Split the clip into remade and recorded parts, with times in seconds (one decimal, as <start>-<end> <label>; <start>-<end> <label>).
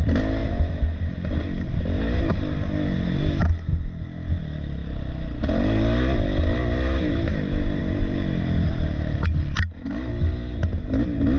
0.0-7.8 recorded; 7.8-10.1 remade; 10.1-11.4 recorded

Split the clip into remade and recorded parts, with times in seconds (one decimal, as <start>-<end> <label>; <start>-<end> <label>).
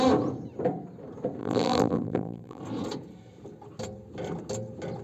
0.0-1.4 recorded; 1.4-2.6 remade; 2.6-5.0 recorded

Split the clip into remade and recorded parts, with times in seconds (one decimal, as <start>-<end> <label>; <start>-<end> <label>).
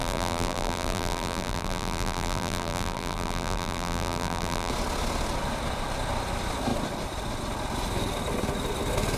0.0-4.7 remade; 4.7-9.2 recorded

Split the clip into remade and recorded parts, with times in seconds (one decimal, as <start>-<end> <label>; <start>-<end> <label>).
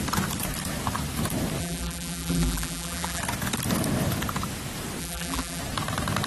0.0-1.6 recorded; 1.6-3.2 remade; 3.2-5.0 recorded; 5.0-5.6 remade; 5.6-6.3 recorded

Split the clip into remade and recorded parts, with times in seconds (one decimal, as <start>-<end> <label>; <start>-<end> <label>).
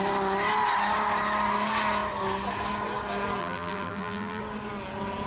0.0-3.4 recorded; 3.4-4.4 remade; 4.4-5.3 recorded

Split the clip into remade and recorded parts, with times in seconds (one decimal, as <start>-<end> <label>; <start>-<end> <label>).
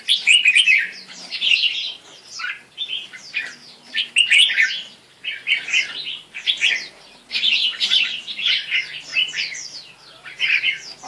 0.0-1.5 remade; 1.5-5.6 recorded; 5.6-9.1 remade; 9.1-11.1 recorded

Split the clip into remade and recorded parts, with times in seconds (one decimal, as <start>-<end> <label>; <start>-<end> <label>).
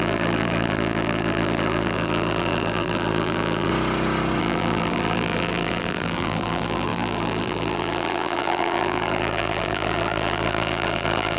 0.0-3.7 remade; 3.7-4.4 recorded; 4.4-11.4 remade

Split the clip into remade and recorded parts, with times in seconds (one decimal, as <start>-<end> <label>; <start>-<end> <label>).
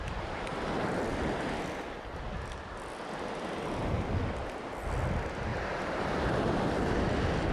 0.0-5.5 recorded; 5.5-6.3 remade; 6.3-7.5 recorded